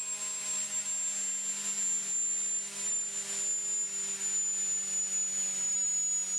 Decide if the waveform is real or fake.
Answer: real